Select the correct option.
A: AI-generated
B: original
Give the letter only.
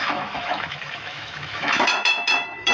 A